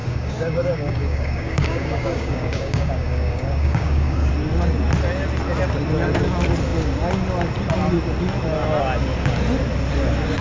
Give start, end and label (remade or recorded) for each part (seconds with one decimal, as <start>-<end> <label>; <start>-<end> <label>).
0.0-4.3 remade; 4.3-10.4 recorded